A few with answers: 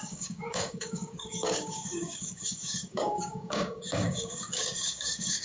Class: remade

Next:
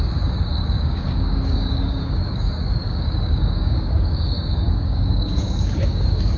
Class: remade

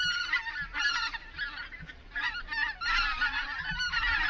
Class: recorded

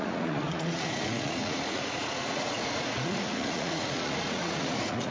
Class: remade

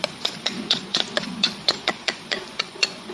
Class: remade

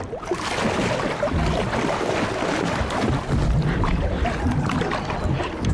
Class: recorded